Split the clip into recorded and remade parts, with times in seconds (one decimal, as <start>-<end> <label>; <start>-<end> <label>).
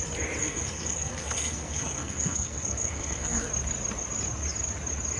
0.0-0.4 recorded; 0.4-3.5 remade; 3.5-5.2 recorded